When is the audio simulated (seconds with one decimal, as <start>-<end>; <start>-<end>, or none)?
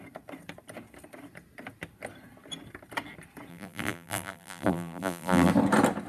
3.5-5.5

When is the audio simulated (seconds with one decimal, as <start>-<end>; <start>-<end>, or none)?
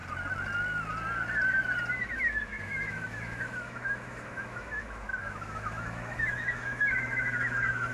1.9-7.9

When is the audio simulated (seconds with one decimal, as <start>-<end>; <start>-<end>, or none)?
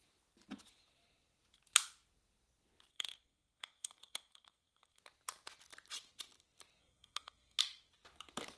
2.9-5.0; 6.8-7.6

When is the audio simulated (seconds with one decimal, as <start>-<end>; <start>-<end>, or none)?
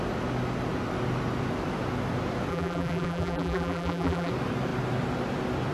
2.5-4.3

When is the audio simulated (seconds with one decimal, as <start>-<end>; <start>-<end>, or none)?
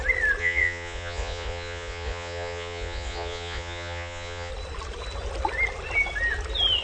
0.4-4.5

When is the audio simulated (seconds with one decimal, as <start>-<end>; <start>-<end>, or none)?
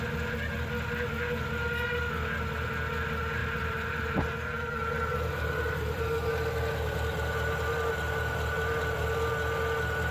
3.4-6.0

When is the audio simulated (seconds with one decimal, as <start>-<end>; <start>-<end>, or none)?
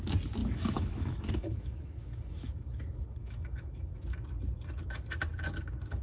0.4-4.0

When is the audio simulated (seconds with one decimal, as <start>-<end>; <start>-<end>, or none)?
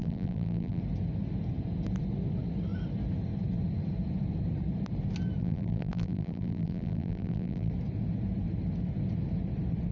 0.0-0.8; 5.4-7.7